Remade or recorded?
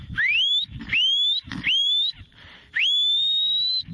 recorded